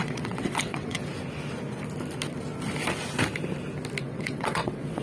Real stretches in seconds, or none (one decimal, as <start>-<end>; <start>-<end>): 1.0-4.0